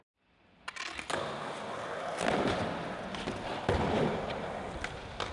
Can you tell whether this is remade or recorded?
recorded